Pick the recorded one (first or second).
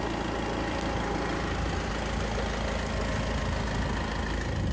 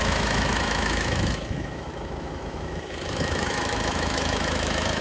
first